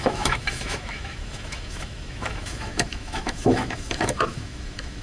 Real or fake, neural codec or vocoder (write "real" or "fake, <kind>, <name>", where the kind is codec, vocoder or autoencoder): fake, autoencoder, DAC-VAE